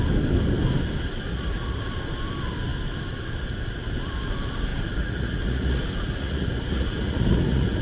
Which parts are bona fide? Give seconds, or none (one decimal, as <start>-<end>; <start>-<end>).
0.0-1.3; 1.9-4.7